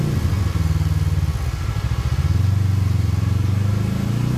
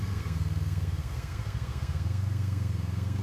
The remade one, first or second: second